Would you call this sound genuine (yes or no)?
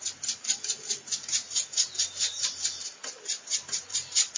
yes